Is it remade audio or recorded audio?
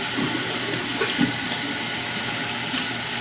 recorded